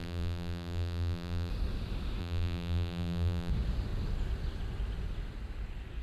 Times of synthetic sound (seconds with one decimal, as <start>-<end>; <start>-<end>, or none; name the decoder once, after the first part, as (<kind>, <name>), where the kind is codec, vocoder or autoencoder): 0.0-1.5 (vocoder, BigVGAN v2); 2.2-3.5